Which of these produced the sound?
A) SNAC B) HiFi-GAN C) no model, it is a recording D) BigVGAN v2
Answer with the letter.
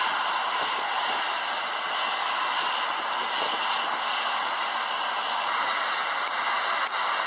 C